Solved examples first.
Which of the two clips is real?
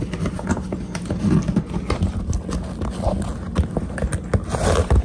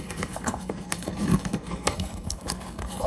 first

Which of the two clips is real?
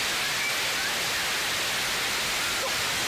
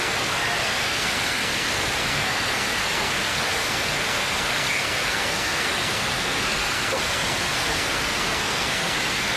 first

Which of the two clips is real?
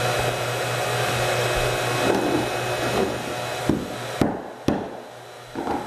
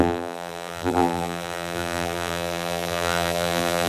first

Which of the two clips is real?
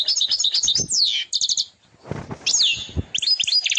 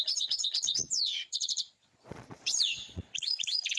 first